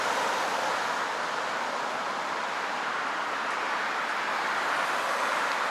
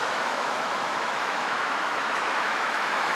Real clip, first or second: first